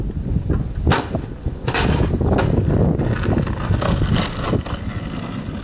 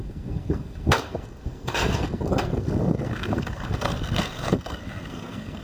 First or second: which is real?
first